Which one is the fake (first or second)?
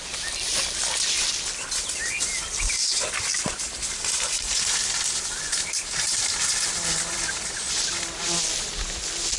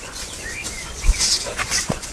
second